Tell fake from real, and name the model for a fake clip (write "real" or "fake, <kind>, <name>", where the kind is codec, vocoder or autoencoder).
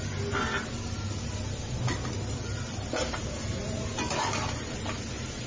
real